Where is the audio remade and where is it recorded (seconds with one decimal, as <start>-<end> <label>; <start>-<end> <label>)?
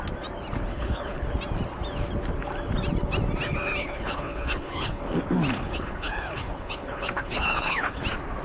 0.0-0.7 recorded; 0.7-1.2 remade; 1.2-3.8 recorded; 3.8-5.0 remade; 5.0-5.5 recorded; 5.5-8.0 remade; 8.0-8.4 recorded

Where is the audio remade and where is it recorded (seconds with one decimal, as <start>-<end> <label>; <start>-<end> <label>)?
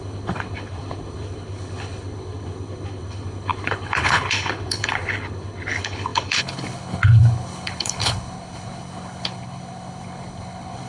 0.0-10.9 remade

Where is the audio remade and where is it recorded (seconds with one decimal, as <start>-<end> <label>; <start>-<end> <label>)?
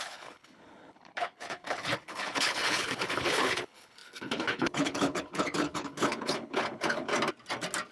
0.0-7.1 remade; 7.1-7.9 recorded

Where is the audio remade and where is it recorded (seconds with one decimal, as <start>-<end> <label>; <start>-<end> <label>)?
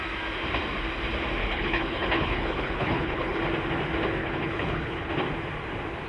0.0-1.4 recorded; 1.4-3.4 remade; 3.4-4.2 recorded; 4.2-5.1 remade; 5.1-6.1 recorded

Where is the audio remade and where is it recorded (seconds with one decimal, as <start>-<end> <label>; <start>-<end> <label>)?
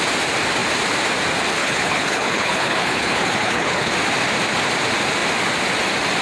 0.0-1.6 recorded; 1.6-3.9 remade; 3.9-6.2 recorded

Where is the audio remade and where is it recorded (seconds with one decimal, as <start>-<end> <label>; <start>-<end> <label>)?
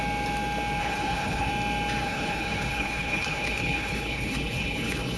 0.0-0.8 recorded; 0.8-1.5 remade; 1.5-2.0 recorded; 2.0-5.2 remade